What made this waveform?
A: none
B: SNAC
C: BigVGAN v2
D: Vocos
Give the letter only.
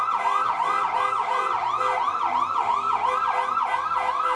A